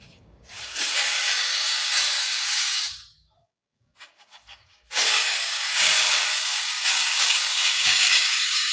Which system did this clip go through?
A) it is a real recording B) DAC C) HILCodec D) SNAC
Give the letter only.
B